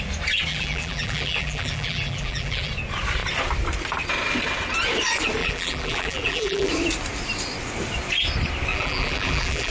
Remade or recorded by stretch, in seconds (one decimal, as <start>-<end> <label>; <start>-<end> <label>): 0.0-0.5 recorded; 0.5-2.7 remade; 2.7-5.4 recorded; 5.4-6.7 remade; 6.7-8.7 recorded; 8.7-9.7 remade